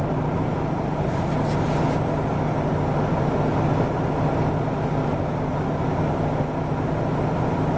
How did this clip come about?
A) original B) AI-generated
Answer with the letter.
A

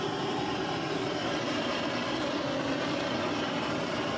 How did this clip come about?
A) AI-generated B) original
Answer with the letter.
A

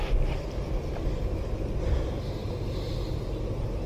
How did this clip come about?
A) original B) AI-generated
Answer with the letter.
A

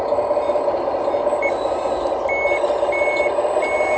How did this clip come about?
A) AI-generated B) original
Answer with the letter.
B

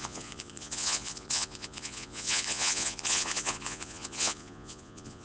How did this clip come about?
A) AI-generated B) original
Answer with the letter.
A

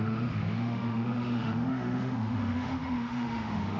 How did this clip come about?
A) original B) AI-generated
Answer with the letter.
B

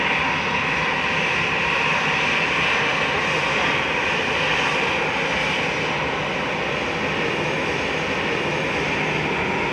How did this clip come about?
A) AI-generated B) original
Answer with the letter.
B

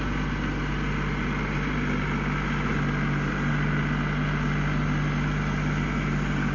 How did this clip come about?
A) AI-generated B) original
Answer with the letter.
B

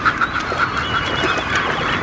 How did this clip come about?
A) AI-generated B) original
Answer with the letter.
B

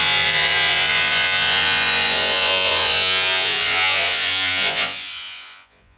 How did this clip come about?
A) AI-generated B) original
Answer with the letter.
A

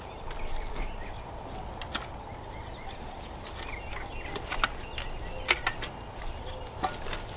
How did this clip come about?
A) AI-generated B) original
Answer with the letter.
B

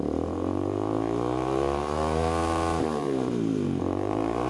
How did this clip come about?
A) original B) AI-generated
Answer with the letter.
B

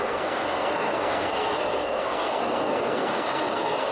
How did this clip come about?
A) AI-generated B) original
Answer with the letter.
A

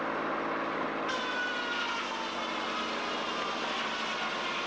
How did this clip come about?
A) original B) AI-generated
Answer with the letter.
A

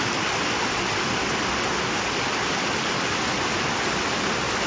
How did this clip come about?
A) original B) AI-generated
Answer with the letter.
A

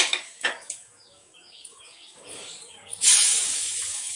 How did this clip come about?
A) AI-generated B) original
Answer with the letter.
A